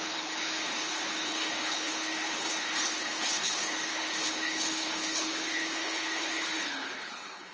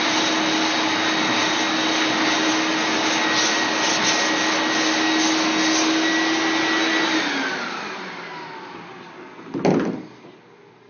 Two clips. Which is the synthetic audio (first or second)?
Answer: first